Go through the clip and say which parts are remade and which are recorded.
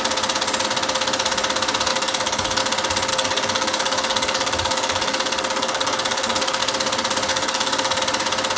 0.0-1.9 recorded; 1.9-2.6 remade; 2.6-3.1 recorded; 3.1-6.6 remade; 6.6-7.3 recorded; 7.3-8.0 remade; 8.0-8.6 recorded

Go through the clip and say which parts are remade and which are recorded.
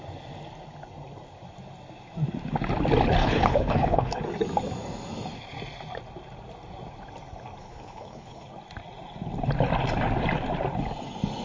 0.0-3.2 recorded; 3.2-4.2 remade; 4.2-7.6 recorded; 7.6-8.5 remade; 8.5-11.4 recorded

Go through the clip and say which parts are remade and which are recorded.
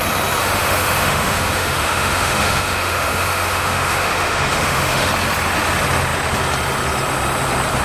0.0-0.4 recorded; 0.4-5.1 remade; 5.1-7.8 recorded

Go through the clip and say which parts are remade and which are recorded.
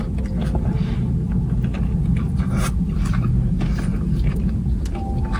0.0-5.4 recorded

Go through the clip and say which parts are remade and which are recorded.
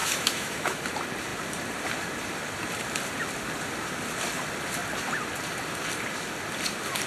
0.0-0.8 remade; 0.8-7.1 recorded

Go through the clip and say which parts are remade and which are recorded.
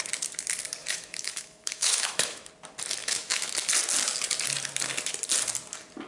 0.0-0.8 recorded; 0.8-2.5 remade; 2.5-3.0 recorded; 3.0-3.5 remade; 3.5-6.1 recorded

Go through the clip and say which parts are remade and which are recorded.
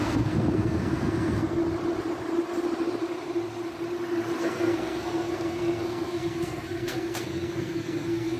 0.0-1.6 remade; 1.6-4.4 recorded; 4.4-8.4 remade